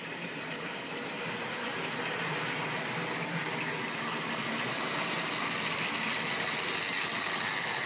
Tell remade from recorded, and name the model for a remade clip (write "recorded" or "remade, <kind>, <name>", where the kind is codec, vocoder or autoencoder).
recorded